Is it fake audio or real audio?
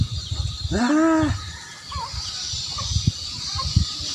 real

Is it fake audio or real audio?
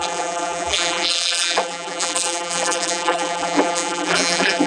fake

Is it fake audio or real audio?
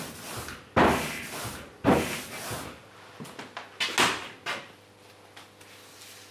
real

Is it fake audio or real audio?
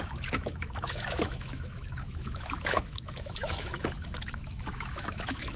fake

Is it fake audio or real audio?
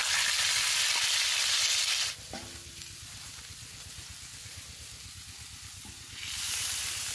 real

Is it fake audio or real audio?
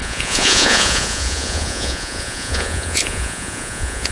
fake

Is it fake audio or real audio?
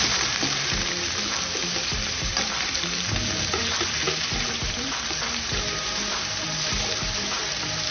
fake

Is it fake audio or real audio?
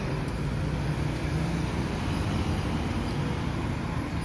real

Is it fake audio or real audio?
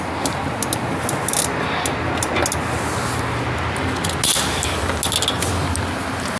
real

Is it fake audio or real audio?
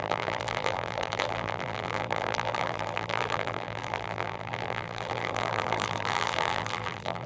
fake